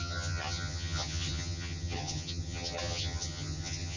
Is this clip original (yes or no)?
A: no